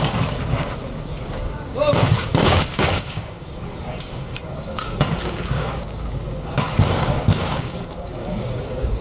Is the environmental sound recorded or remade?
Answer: remade